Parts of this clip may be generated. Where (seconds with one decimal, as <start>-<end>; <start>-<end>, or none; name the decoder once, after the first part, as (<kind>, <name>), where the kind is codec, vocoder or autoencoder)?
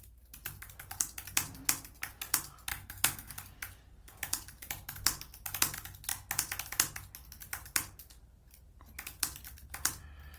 2.7-3.3 (codec, SNAC)